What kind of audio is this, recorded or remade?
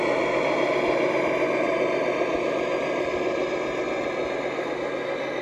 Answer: recorded